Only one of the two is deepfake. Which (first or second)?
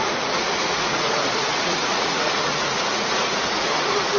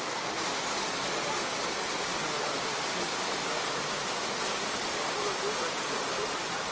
first